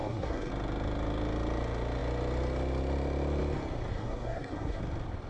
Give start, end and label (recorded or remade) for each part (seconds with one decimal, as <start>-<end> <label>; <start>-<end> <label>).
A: 0.0-0.5 remade; 0.5-3.9 recorded; 3.9-4.8 remade; 4.8-5.3 recorded